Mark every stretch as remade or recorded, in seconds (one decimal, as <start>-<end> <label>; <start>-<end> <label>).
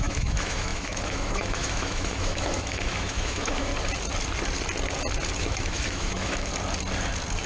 0.0-3.7 remade; 3.7-5.4 recorded; 5.4-6.5 remade; 6.5-7.5 recorded